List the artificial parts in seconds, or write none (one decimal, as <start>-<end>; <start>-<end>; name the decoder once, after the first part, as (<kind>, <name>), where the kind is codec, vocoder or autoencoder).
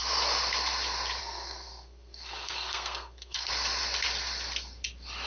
1.2-3.5 (codec, SNAC)